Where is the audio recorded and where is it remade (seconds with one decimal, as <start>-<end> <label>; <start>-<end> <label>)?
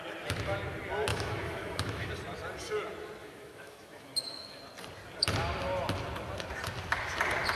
0.0-1.1 recorded; 1.1-2.1 remade; 2.1-3.2 recorded; 3.2-4.6 remade; 4.6-7.6 recorded